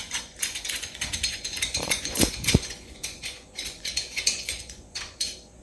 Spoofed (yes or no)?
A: yes